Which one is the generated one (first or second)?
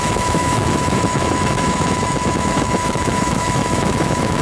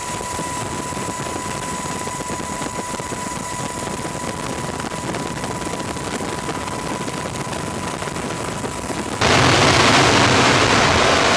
first